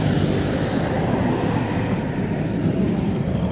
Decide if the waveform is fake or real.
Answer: fake